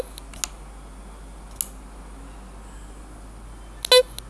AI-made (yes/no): no